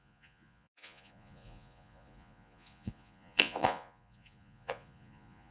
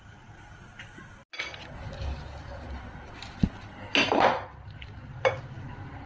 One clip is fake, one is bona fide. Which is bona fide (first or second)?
second